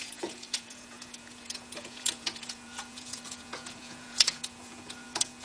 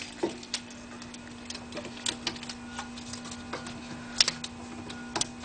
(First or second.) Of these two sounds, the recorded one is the second